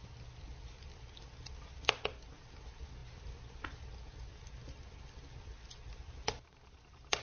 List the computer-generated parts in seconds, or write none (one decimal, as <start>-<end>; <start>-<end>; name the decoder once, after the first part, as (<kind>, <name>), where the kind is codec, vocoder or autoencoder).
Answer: none